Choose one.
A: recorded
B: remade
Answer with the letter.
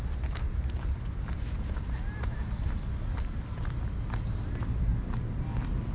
A